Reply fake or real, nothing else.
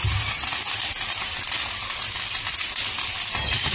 real